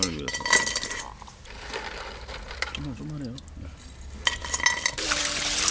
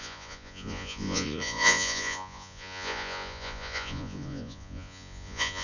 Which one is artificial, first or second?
second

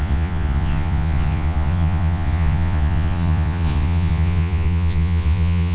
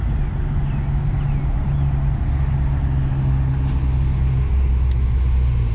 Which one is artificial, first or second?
first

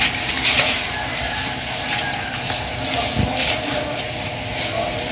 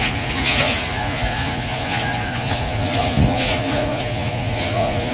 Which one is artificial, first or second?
second